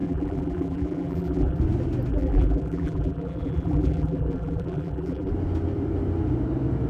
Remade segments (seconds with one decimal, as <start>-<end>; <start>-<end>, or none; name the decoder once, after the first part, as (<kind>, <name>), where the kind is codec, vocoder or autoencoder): 0.0-1.6 (vocoder, BigVGAN v2); 2.1-5.3